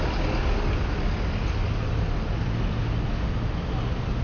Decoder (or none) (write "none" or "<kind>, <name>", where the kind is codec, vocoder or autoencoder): none